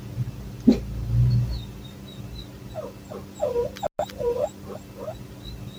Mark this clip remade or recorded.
recorded